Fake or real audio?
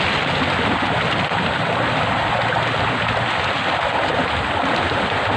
real